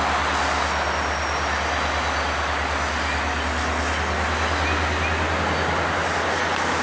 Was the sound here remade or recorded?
recorded